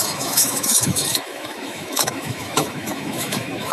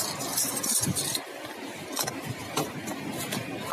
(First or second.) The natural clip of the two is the second